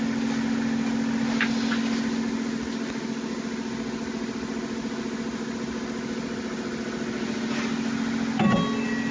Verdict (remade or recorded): recorded